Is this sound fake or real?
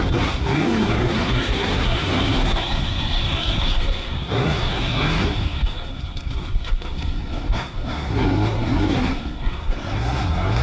fake